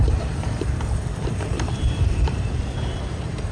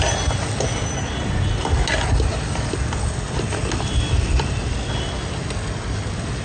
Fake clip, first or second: first